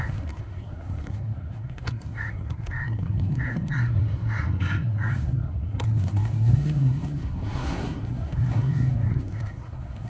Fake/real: fake